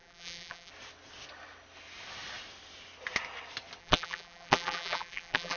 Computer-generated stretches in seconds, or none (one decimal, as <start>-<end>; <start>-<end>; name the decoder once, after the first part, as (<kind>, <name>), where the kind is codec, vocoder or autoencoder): 0.0-0.7 (vocoder, BigVGAN v2); 3.8-5.6